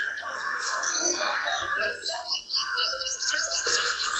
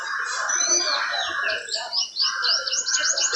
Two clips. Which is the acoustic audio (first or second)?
second